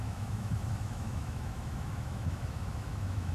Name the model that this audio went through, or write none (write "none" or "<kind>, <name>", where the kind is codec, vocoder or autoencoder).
autoencoder, DAC-VAE